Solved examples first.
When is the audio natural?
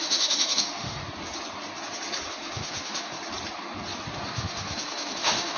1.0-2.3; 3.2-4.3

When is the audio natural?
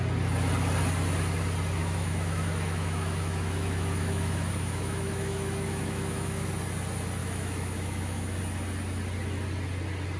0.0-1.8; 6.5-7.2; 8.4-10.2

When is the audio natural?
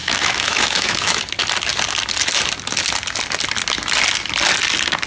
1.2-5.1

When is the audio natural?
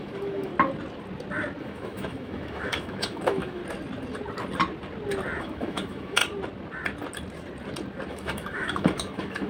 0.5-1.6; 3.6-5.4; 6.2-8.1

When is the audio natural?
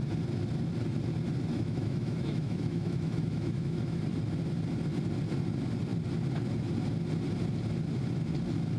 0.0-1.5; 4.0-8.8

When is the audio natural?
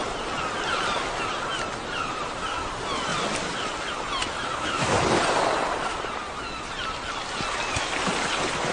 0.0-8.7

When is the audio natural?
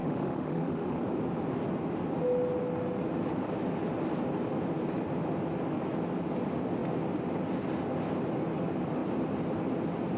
1.0-10.2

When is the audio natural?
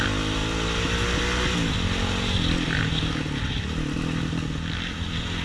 0.0-5.4